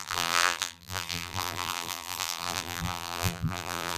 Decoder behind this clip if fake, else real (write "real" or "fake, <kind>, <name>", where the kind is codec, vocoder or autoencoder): fake, vocoder, BigVGAN v2